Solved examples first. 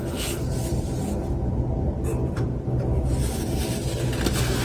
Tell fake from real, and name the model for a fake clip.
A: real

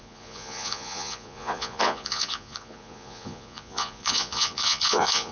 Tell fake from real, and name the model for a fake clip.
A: fake, vocoder, Vocos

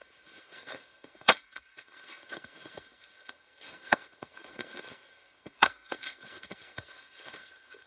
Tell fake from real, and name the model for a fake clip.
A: fake, codec, SNAC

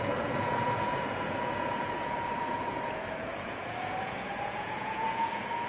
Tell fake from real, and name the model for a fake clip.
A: fake, vocoder, Vocos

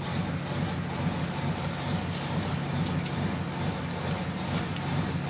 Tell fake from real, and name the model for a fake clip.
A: real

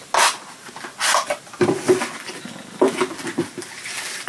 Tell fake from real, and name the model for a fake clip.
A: real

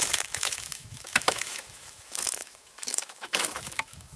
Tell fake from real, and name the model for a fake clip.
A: fake, autoencoder, DAC-VAE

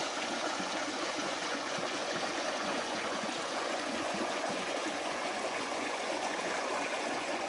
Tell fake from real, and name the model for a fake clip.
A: fake, vocoder, Vocos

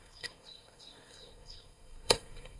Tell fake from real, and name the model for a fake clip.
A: fake, codec, SNAC